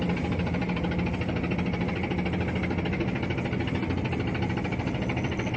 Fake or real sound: real